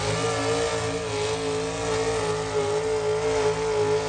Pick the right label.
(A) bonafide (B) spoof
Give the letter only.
A